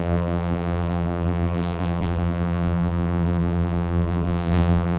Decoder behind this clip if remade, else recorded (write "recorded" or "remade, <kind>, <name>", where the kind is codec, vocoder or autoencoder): remade, vocoder, BigVGAN v2